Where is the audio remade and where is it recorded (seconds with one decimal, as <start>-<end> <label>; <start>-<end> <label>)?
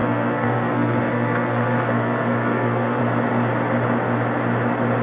0.0-3.0 remade; 3.0-5.0 recorded